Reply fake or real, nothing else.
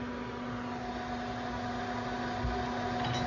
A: real